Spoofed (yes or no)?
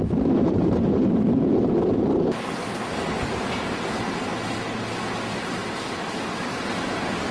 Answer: no